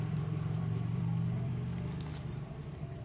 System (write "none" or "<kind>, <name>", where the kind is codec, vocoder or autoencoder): vocoder, BigVGAN v2